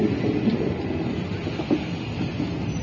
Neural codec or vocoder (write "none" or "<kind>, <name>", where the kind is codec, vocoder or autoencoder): none